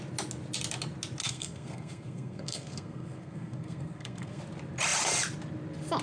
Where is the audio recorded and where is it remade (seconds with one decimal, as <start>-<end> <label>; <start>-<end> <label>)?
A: 0.0-1.2 recorded; 1.2-4.4 remade; 4.4-6.0 recorded